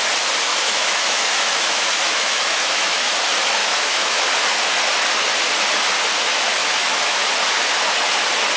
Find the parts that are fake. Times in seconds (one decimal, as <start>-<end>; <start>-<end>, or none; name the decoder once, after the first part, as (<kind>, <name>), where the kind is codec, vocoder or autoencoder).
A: 0.5-3.1 (autoencoder, DAC-VAE); 3.6-4.2; 6.6-7.2